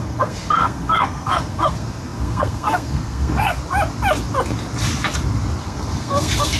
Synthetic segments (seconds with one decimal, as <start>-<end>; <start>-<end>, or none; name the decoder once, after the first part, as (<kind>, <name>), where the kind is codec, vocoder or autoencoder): 0.0-3.6 (codec, SNAC); 5.6-6.6